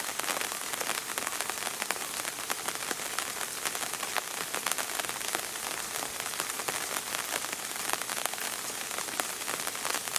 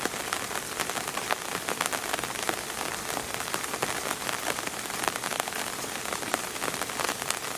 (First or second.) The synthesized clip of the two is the second